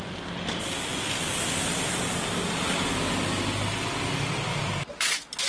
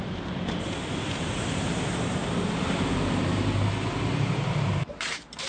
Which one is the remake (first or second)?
second